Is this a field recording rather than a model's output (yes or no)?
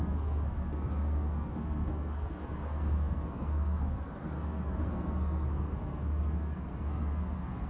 no